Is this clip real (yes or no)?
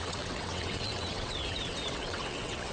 no